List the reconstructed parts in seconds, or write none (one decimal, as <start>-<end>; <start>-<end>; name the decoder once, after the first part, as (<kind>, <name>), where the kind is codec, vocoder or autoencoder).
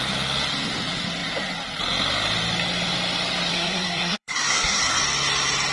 3.5-5.0 (codec, SNAC)